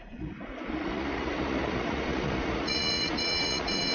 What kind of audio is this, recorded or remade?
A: remade